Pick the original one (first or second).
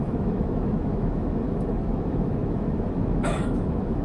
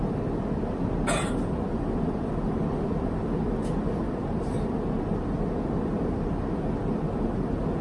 second